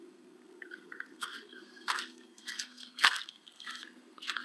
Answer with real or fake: fake